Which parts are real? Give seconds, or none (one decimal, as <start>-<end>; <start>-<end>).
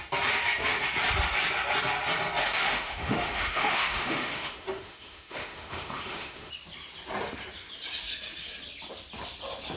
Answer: 0.0-2.4; 6.5-9.8